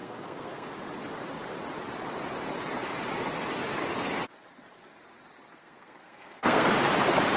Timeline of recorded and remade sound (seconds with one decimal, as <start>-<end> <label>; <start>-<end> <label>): 0.0-0.7 remade; 0.7-5.5 recorded; 5.5-6.7 remade; 6.7-7.4 recorded